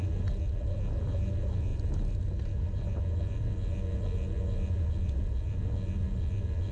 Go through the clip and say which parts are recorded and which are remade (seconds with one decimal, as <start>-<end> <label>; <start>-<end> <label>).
0.0-6.7 recorded